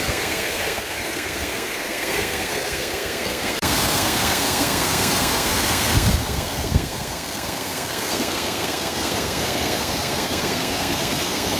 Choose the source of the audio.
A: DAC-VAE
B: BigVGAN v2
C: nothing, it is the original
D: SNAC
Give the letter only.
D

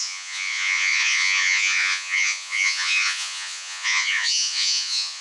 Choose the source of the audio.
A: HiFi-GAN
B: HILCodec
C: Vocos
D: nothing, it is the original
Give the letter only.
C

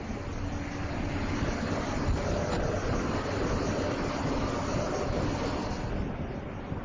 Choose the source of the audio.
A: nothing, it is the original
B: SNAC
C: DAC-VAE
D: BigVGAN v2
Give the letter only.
A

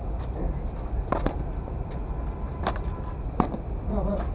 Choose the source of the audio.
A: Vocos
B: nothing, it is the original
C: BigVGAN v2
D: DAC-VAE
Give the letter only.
C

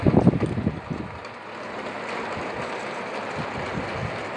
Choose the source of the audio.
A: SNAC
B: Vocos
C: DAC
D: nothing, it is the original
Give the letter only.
D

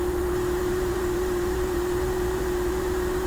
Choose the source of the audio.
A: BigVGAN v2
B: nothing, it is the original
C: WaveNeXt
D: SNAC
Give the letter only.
A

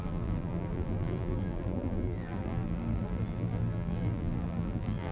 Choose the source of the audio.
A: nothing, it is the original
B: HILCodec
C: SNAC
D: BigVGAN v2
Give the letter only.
D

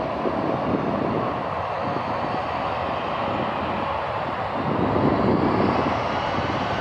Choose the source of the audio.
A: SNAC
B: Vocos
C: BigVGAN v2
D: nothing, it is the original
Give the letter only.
D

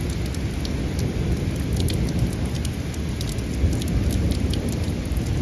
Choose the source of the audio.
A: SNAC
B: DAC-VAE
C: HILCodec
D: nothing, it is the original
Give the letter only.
D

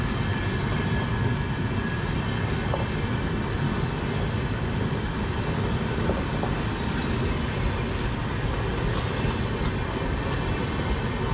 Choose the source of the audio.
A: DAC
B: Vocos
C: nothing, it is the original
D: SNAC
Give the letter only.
C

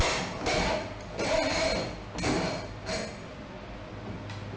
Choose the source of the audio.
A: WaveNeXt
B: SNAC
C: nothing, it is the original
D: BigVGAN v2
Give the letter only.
C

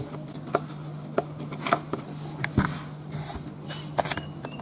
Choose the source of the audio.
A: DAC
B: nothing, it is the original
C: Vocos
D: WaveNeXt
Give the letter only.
B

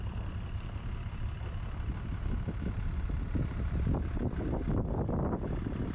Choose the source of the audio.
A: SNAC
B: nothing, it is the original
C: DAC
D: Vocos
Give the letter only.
B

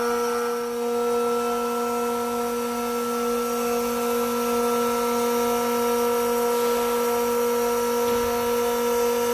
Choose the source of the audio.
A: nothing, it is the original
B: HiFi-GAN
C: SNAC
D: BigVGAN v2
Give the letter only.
A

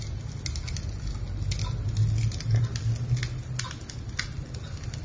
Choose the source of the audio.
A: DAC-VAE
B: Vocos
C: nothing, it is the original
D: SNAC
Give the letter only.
C